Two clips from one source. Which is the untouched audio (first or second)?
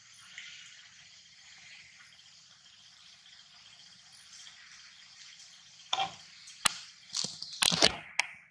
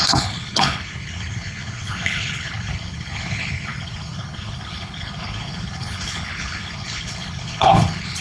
first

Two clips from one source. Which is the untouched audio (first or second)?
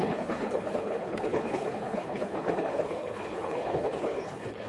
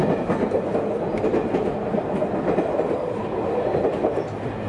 second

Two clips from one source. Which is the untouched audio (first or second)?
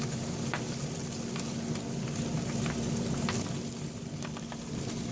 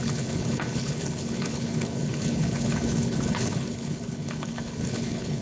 first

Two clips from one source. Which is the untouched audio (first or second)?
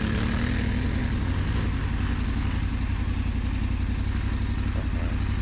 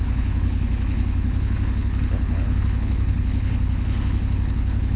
first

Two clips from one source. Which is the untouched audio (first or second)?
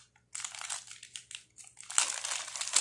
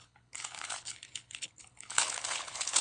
first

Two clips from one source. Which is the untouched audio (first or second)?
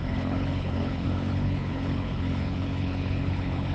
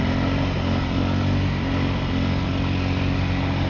second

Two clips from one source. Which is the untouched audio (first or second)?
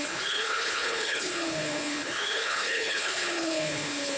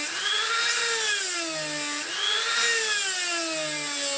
second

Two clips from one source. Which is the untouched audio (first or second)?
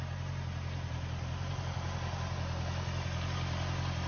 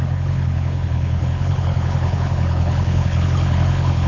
first